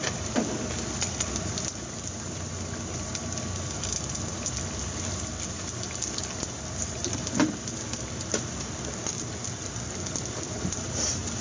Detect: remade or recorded recorded